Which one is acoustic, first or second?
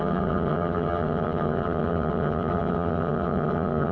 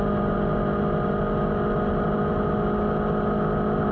second